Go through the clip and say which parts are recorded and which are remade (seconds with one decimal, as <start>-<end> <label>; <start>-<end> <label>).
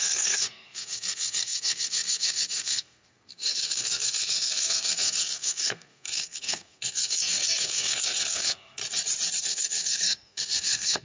0.0-8.8 remade; 8.8-9.4 recorded; 9.4-11.0 remade